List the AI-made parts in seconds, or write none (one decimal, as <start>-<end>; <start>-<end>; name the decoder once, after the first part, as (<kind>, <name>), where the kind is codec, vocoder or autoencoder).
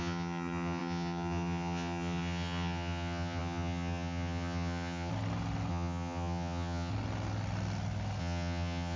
0.0-5.1 (vocoder, HiFi-GAN); 5.7-6.9; 8.2-9.0